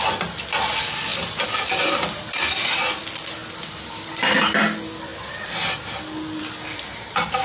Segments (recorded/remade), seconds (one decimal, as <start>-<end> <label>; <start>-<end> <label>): 0.0-7.4 recorded